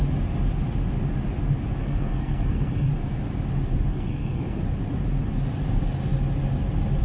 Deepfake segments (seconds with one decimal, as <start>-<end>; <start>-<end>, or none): 1.8-2.9; 3.9-4.6